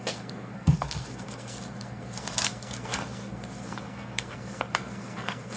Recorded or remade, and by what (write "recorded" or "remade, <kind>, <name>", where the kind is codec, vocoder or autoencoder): remade, codec, SNAC